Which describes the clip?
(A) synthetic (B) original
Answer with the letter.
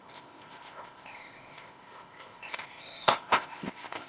A